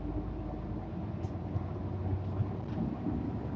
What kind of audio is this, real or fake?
real